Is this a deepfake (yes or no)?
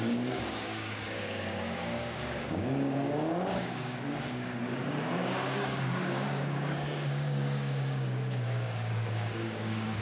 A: yes